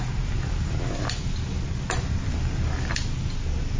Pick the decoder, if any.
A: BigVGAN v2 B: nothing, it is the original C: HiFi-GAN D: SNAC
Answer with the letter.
B